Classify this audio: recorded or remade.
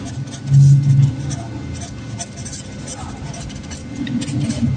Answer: recorded